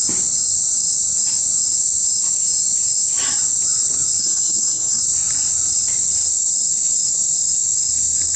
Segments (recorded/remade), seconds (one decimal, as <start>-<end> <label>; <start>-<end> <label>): 0.0-4.2 recorded; 4.2-5.0 remade; 5.0-8.4 recorded